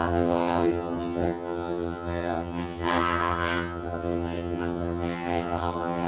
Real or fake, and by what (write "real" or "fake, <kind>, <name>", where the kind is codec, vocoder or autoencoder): fake, vocoder, HiFi-GAN